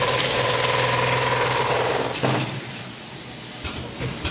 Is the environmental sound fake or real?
real